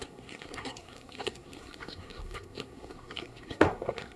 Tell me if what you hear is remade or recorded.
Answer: remade